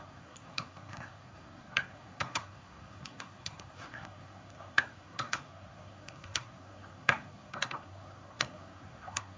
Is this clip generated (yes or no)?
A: yes